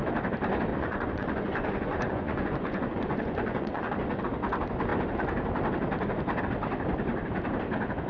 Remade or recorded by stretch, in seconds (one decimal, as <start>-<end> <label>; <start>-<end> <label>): 0.0-0.7 recorded; 0.7-4.2 remade; 4.2-8.1 recorded